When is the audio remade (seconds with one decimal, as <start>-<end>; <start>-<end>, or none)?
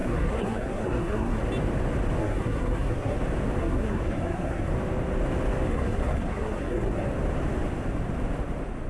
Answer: 0.0-1.4; 2.2-3.2; 3.6-4.7; 5.7-7.1